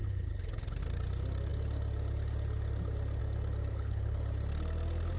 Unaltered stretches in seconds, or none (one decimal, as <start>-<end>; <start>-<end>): 0.8-3.7; 4.2-5.2